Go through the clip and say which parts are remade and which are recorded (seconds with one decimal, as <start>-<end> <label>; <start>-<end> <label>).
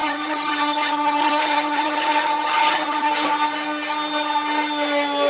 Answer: 0.0-3.1 remade; 3.1-5.3 recorded